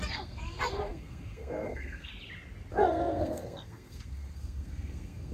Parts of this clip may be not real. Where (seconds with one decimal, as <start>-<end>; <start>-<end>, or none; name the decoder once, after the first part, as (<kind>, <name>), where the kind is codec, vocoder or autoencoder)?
0.0-2.1 (codec, SNAC); 2.7-5.3